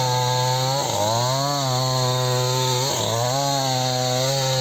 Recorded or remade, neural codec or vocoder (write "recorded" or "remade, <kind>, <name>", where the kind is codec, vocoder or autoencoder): recorded